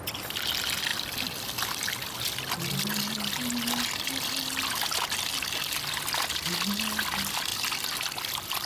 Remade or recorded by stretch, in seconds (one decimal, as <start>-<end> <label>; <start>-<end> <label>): 0.0-8.7 recorded